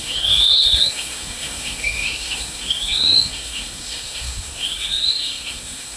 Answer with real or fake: fake